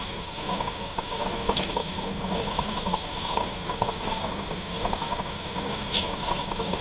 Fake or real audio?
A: fake